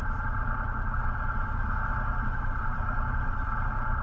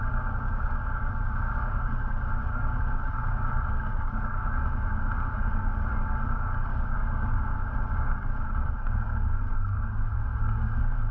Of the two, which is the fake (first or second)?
second